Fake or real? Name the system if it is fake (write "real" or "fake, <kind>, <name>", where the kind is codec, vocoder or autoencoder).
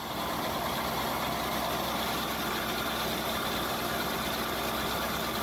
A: real